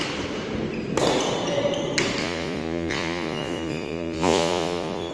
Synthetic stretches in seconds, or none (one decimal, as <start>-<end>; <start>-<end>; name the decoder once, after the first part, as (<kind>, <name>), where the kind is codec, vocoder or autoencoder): 2.2-5.1 (vocoder, Vocos)